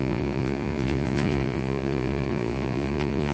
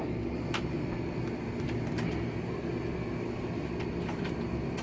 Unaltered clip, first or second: second